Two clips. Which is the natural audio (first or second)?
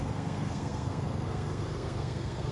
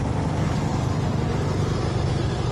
second